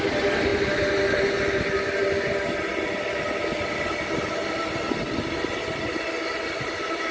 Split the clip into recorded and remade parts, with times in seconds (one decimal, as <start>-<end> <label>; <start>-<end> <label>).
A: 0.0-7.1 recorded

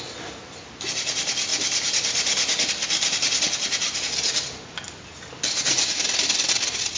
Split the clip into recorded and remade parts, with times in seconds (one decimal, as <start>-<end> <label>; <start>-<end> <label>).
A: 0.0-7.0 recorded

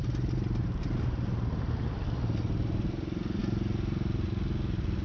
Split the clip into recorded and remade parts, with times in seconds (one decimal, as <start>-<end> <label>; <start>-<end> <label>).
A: 0.0-5.0 recorded

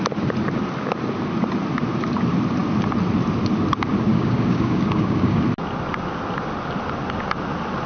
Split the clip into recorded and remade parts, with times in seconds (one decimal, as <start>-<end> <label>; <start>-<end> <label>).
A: 0.0-4.1 recorded; 4.1-5.4 remade; 5.4-7.9 recorded

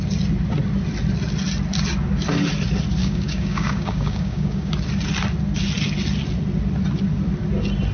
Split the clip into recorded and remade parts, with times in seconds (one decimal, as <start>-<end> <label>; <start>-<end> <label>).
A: 0.0-3.0 recorded; 3.0-4.7 remade; 4.7-7.9 recorded